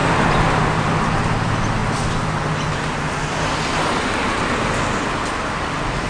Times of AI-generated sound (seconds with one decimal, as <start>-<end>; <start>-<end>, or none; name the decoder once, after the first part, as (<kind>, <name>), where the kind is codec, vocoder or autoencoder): none